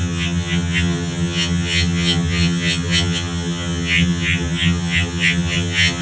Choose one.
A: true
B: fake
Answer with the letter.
B